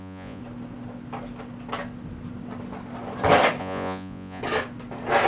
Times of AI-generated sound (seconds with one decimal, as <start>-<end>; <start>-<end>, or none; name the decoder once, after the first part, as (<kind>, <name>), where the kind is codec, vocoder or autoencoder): 0.0-0.4 (vocoder, Vocos); 3.6-4.4